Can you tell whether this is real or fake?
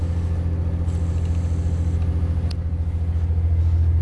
real